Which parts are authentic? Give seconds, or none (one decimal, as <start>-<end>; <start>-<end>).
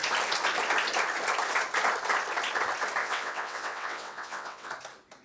0.0-3.0; 4.7-5.2